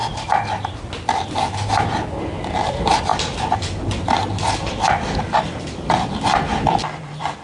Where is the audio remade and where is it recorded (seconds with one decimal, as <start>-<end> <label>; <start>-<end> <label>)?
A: 0.0-3.1 recorded; 3.1-7.4 remade